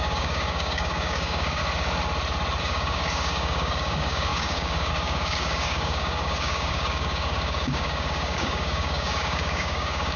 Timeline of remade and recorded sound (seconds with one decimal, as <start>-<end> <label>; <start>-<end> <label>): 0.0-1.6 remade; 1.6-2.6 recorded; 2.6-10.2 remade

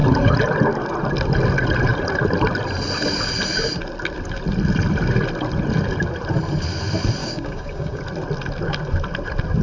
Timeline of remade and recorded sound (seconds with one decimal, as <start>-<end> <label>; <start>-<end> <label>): 0.0-7.2 recorded; 7.2-8.0 remade; 8.0-9.6 recorded

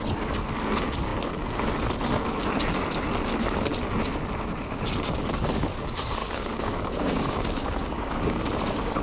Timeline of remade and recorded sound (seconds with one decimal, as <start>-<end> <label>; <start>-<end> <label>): 0.0-6.2 recorded; 6.2-8.4 remade; 8.4-9.0 recorded

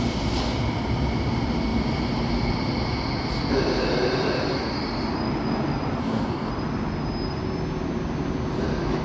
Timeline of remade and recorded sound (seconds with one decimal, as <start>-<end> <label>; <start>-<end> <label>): 0.0-6.0 recorded; 6.0-6.5 remade; 6.5-9.0 recorded

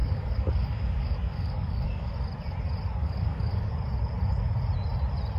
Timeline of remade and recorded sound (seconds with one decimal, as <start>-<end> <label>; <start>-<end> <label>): 0.0-2.1 remade; 2.1-3.0 recorded; 3.0-3.7 remade; 3.7-5.4 recorded

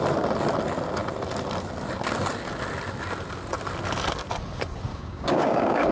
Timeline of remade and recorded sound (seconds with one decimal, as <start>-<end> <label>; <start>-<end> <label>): 0.0-4.9 recorded; 4.9-5.9 remade

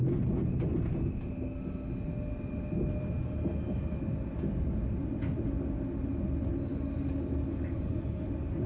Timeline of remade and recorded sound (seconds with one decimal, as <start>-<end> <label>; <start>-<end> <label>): 0.0-6.7 recorded; 6.7-8.7 remade